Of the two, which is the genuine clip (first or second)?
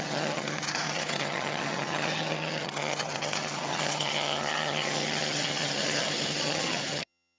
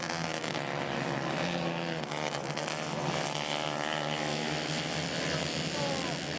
second